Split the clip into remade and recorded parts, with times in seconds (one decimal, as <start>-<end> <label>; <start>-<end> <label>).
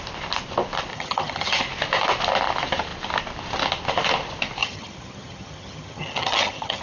0.0-0.9 recorded; 0.9-1.6 remade; 1.6-4.6 recorded; 4.6-6.8 remade